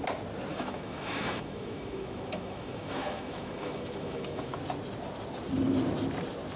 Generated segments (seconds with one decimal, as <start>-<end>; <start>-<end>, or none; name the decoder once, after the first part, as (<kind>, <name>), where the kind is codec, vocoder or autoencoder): 0.5-4.5 (autoencoder, DAC-VAE)